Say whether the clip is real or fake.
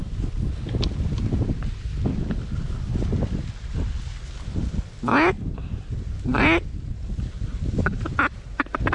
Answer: real